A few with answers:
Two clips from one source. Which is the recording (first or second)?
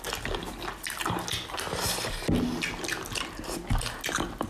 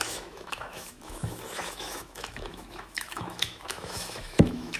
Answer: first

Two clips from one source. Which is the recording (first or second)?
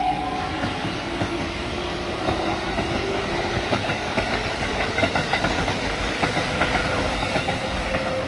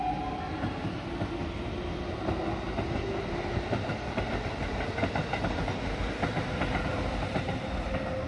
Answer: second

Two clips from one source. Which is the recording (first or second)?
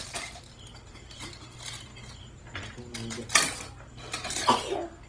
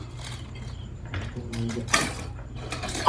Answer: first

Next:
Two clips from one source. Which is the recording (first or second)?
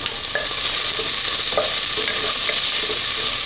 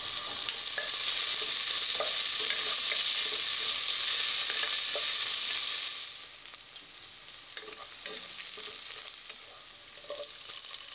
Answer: second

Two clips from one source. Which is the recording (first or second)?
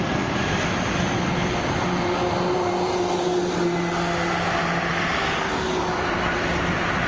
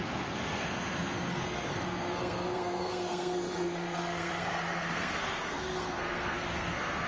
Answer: first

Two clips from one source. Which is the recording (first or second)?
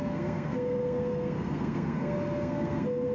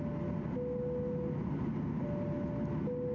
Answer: second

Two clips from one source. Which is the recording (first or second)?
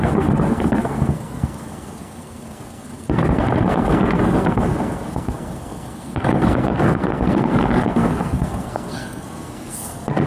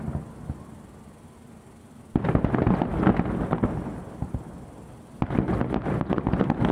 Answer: second